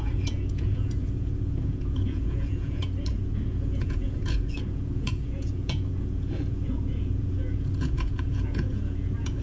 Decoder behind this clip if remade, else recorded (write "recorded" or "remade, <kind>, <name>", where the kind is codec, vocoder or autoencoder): remade, vocoder, Vocos